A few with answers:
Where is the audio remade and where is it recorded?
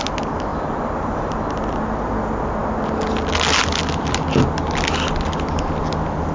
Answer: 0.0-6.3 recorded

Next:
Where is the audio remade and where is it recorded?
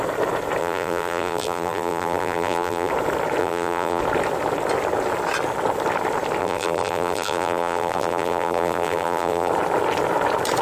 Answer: 0.0-0.6 recorded; 0.6-2.9 remade; 2.9-3.4 recorded; 3.4-4.0 remade; 4.0-6.4 recorded; 6.4-9.5 remade; 9.5-10.6 recorded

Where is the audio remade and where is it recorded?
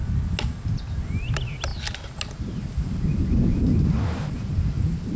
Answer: 0.0-5.2 recorded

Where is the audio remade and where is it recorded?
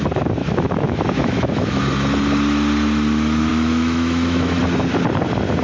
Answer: 0.0-0.4 recorded; 0.4-1.8 remade; 1.8-3.5 recorded; 3.5-4.6 remade; 4.6-5.6 recorded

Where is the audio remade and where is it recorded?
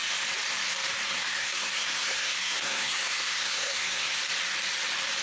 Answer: 0.0-1.1 recorded; 1.1-4.2 remade; 4.2-5.2 recorded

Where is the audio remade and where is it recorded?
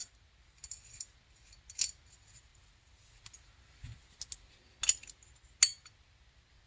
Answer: 0.0-6.7 recorded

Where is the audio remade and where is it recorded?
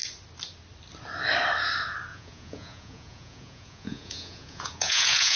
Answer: 0.0-2.1 recorded; 2.1-5.4 remade